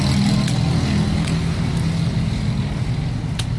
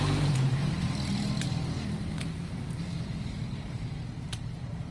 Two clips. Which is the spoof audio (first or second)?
second